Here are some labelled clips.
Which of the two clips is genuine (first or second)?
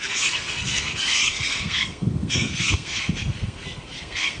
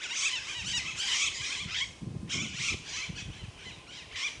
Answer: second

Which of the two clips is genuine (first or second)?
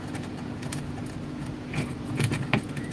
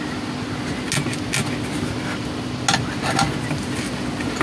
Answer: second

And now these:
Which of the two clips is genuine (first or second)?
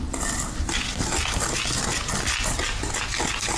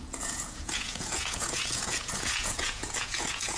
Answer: first